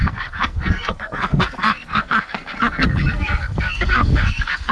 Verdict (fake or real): fake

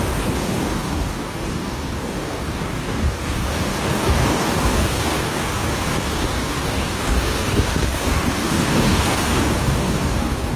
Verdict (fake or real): fake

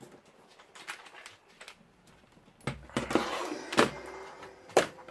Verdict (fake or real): real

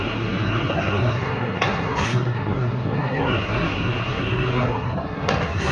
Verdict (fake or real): fake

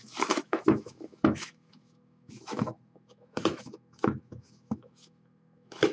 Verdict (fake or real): fake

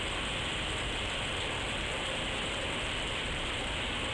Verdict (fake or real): real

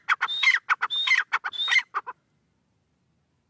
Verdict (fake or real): real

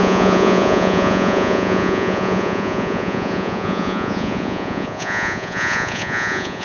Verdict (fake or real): fake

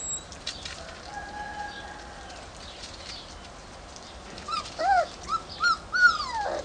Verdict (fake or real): real